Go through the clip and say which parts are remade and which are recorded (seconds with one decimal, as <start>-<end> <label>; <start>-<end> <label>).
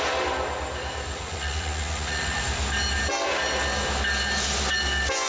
0.0-1.1 recorded; 1.1-2.4 remade; 2.4-5.3 recorded